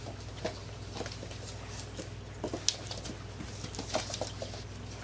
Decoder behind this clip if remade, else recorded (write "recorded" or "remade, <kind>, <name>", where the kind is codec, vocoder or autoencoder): recorded